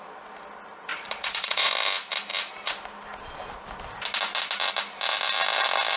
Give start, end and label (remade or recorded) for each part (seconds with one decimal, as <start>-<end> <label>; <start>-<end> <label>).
0.0-0.9 recorded; 0.9-1.7 remade; 1.7-6.0 recorded